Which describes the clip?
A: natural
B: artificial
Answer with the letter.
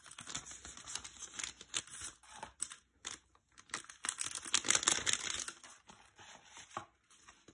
A